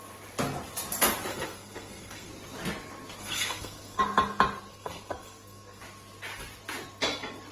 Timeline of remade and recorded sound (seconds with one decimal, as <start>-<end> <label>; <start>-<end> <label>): 0.0-1.3 recorded; 1.3-2.3 remade; 2.3-3.2 recorded; 3.2-4.0 remade; 4.0-4.7 recorded; 4.7-5.8 remade; 5.8-7.5 recorded